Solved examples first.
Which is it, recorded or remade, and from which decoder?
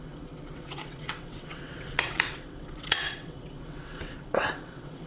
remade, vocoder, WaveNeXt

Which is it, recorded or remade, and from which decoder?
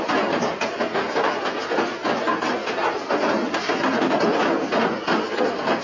recorded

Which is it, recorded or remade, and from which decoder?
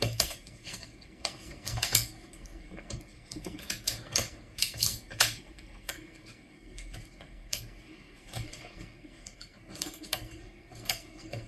remade, codec, SNAC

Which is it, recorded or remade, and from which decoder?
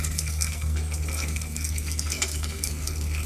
remade, codec, SNAC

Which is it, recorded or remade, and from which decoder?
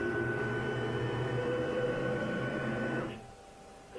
recorded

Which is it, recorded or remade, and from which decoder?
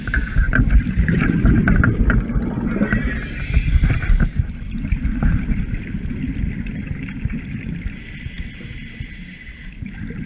recorded